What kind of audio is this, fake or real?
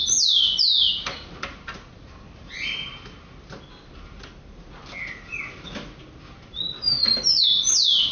real